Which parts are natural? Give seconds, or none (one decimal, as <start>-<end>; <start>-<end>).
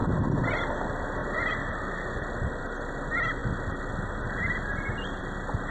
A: 0.0-5.7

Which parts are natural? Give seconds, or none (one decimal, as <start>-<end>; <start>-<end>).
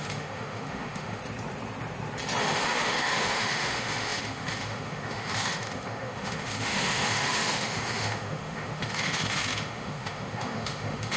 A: 1.2-2.4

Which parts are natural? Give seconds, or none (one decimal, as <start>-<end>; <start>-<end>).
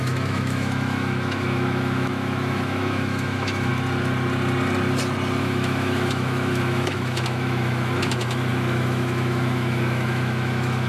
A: 3.7-5.4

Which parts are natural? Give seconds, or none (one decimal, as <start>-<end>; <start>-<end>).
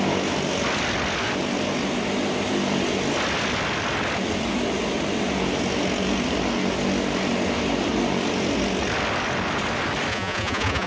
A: 0.0-10.1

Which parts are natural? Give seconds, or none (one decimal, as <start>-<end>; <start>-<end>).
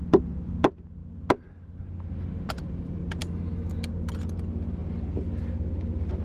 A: 0.0-3.2; 3.9-6.2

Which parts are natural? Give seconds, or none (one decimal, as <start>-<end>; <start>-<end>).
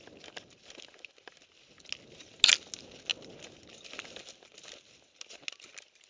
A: 0.0-6.1